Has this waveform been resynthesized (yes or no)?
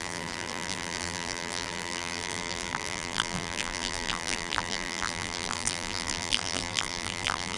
yes